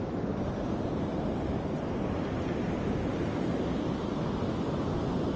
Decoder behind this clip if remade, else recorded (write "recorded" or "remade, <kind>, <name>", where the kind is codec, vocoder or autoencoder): recorded